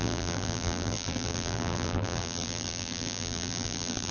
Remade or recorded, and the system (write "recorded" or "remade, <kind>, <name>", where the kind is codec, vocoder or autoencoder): remade, vocoder, BigVGAN v2